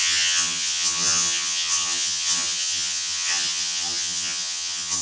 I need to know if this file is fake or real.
fake